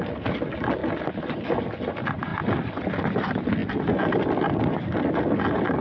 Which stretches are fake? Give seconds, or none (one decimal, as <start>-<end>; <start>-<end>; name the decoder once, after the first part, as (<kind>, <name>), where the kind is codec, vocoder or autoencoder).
none